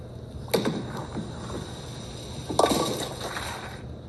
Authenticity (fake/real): real